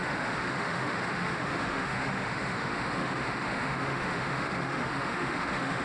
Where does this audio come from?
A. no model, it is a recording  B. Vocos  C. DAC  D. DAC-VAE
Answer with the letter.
D